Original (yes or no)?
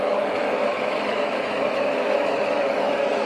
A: no